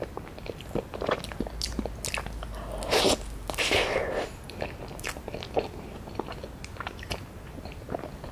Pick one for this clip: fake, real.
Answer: real